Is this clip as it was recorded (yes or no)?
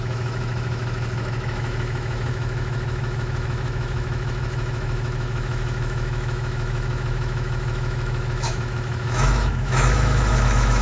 no